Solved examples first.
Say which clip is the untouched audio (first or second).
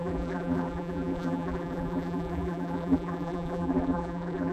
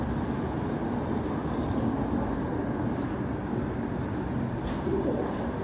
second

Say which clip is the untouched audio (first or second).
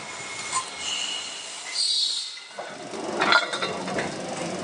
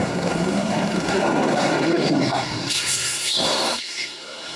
first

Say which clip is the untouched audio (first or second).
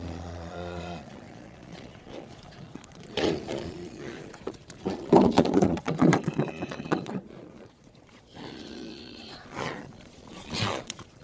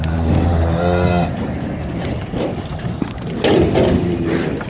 second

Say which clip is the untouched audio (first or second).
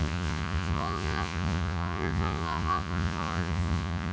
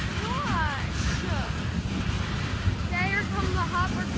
second